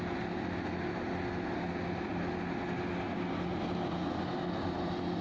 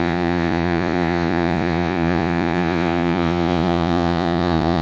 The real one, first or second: first